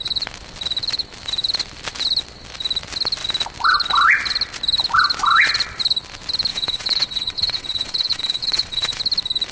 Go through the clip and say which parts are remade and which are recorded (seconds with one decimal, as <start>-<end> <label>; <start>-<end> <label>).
0.0-6.5 recorded; 6.5-9.0 remade; 9.0-9.5 recorded